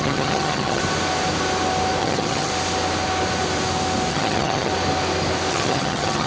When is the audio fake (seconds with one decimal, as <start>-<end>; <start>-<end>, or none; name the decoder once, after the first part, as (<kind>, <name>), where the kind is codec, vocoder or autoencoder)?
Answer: 0.0-0.8 (vocoder, HiFi-GAN); 2.0-2.5; 4.1-4.7; 5.5-6.3